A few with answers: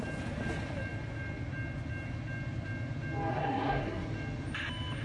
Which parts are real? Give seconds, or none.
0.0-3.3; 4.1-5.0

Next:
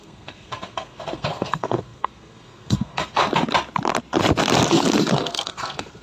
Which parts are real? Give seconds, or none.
3.2-5.1